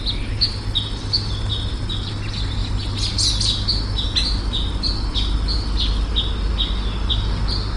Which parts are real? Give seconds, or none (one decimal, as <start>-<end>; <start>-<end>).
0.0-7.8